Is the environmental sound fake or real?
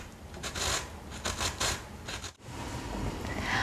real